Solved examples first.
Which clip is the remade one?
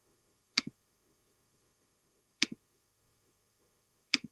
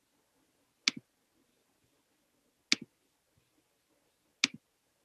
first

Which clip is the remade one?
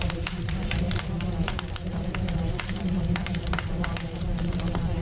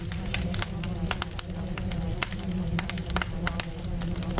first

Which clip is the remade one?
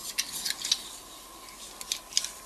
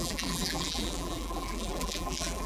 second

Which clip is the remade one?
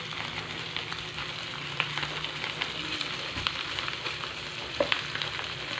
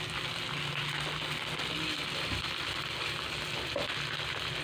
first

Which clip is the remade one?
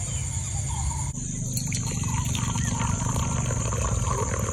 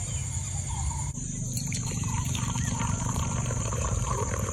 second